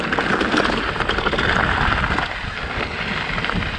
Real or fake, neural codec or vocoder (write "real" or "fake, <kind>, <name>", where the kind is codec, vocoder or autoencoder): real